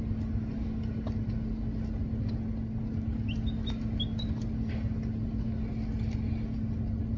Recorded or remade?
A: recorded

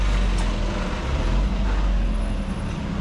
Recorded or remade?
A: recorded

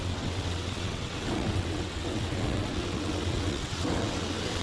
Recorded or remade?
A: remade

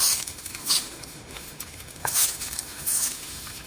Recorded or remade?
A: remade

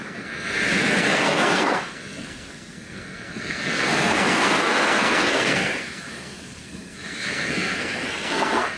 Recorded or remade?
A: remade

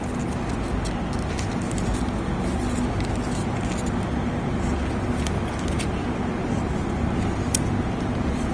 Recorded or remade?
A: recorded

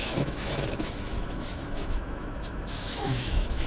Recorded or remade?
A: remade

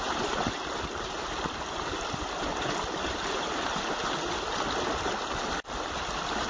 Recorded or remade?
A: recorded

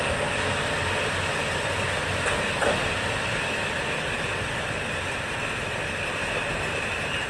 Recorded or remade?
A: recorded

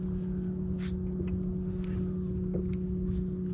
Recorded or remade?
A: recorded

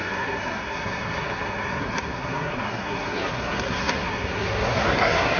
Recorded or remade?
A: remade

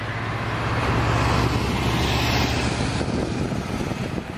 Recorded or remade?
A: recorded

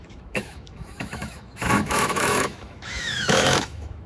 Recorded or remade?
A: remade